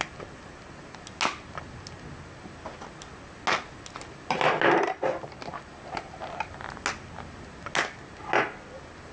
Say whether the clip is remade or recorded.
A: recorded